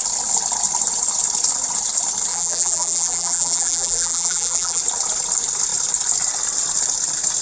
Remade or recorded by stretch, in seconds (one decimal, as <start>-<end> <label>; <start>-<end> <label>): 0.0-2.3 recorded; 2.3-4.8 remade; 4.8-7.4 recorded